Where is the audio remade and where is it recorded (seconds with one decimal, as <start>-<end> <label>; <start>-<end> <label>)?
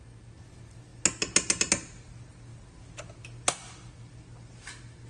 0.0-5.1 recorded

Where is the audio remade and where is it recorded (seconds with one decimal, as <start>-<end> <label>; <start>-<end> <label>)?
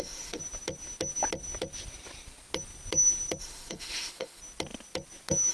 0.0-0.4 remade; 0.4-3.4 recorded; 3.4-4.4 remade; 4.4-5.5 recorded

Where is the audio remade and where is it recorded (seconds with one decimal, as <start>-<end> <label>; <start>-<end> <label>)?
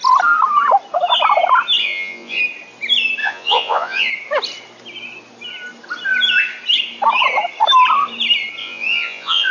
0.0-1.8 recorded; 1.8-2.4 remade; 2.4-3.2 recorded; 3.2-4.1 remade; 4.1-8.6 recorded; 8.6-9.5 remade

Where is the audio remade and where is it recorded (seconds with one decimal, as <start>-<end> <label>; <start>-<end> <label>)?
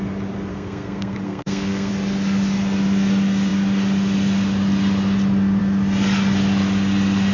0.0-0.5 recorded; 0.5-1.9 remade; 1.9-7.3 recorded